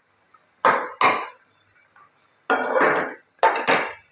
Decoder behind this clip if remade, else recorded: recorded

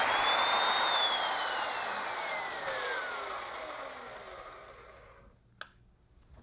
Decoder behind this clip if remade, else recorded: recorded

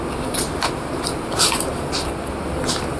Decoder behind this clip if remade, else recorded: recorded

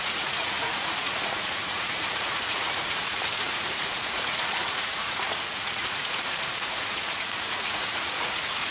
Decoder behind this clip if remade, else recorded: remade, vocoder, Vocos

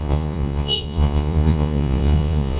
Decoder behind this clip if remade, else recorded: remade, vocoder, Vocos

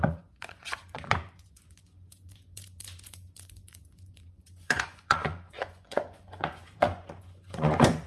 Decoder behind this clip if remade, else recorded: remade, vocoder, Vocos